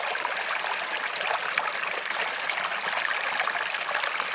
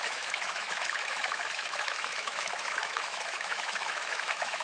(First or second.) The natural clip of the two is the first